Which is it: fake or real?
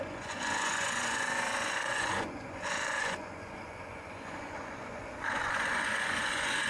fake